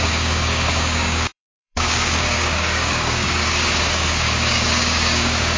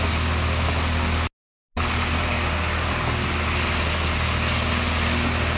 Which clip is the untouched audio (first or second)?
second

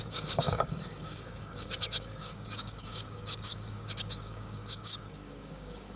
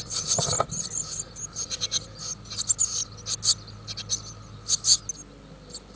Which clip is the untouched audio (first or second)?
second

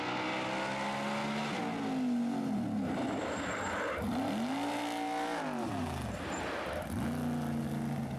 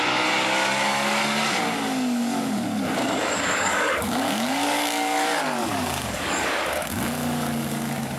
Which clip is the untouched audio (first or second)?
first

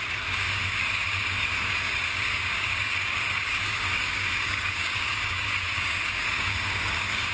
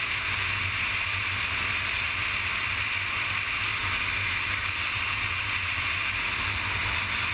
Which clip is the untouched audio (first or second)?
second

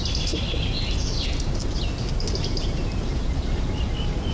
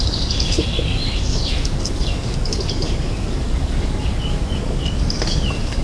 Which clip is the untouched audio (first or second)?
first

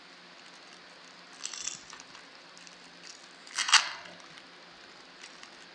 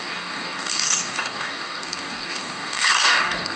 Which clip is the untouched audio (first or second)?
first